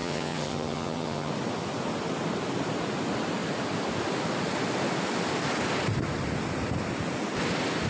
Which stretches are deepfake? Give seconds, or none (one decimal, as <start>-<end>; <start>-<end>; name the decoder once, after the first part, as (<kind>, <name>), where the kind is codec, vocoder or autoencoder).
0.0-1.3 (vocoder, HiFi-GAN)